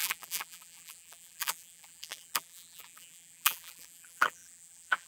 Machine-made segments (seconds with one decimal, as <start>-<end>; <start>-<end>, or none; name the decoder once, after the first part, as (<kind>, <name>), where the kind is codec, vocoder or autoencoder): 0.0-5.1 (vocoder, BigVGAN v2)